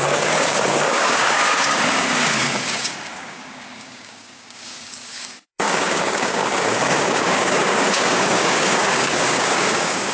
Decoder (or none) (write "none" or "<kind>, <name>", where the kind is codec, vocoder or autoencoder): codec, DAC